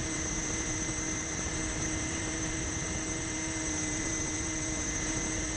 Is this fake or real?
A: fake